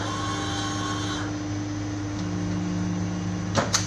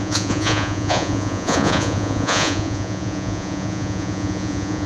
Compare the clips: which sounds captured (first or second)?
first